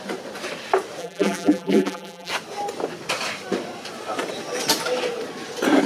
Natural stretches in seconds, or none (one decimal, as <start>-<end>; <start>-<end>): 0.0-1.0; 2.3-5.9